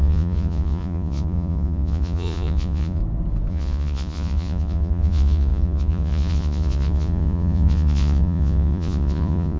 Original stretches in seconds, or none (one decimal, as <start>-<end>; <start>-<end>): 3.0-3.5

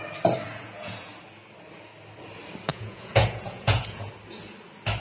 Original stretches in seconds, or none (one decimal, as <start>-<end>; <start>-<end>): 0.0-0.5; 1.1-2.7; 4.1-5.0